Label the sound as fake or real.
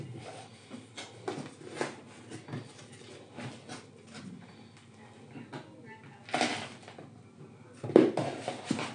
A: real